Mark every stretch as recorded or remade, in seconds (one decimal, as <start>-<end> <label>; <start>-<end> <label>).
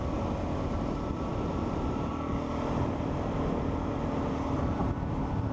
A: 0.0-5.5 recorded